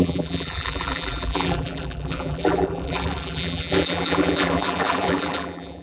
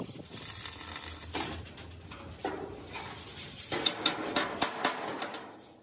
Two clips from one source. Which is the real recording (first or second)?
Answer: second